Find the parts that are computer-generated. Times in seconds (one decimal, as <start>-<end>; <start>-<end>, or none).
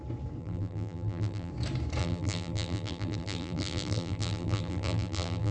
0.4-1.5; 2.0-5.5